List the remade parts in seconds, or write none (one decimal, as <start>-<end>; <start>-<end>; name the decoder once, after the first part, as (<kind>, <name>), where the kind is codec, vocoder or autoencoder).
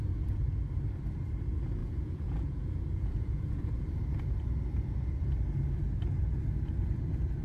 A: 1.8-3.9 (vocoder, Vocos)